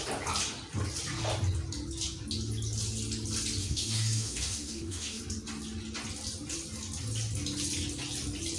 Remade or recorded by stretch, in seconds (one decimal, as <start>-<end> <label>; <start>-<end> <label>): 0.0-3.6 recorded; 3.6-5.2 remade; 5.2-8.6 recorded